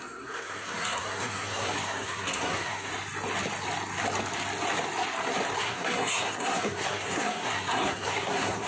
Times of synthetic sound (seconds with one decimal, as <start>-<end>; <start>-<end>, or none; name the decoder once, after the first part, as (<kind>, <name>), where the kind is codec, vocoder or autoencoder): 0.0-2.9 (codec, SNAC); 5.6-8.7